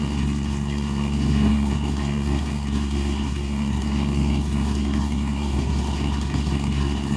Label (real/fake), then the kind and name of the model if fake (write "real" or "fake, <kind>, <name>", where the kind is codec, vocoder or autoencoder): fake, codec, SNAC